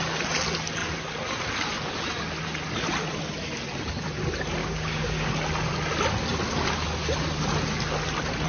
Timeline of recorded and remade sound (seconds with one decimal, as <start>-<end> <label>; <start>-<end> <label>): 0.0-4.6 recorded; 4.6-5.3 remade; 5.3-8.5 recorded